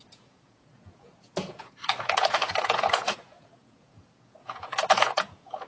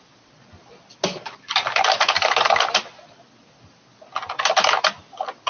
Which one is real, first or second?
second